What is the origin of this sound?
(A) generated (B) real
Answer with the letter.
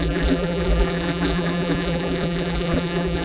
A